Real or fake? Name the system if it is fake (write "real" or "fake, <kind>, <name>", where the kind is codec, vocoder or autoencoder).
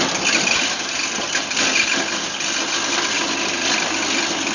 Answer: real